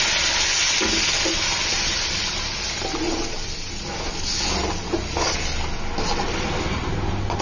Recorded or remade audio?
recorded